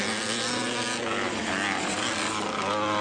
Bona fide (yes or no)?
yes